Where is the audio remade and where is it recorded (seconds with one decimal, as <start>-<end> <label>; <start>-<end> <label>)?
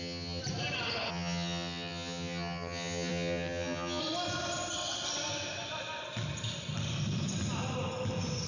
0.0-0.4 remade; 0.4-1.1 recorded; 1.1-4.0 remade; 4.0-8.5 recorded